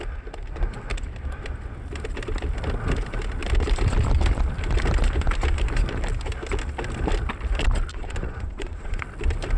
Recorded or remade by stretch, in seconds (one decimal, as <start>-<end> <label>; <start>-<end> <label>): 0.0-7.9 recorded; 7.9-9.0 remade; 9.0-9.6 recorded